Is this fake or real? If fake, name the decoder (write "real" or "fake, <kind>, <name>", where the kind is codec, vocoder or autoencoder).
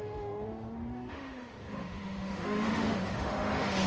fake, autoencoder, DAC-VAE